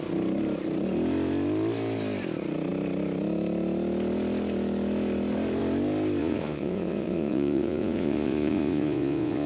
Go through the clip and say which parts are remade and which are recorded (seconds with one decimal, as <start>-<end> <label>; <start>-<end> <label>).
0.0-6.2 recorded; 6.2-9.5 remade